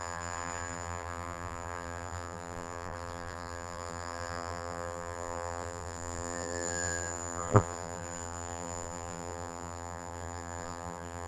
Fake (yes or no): yes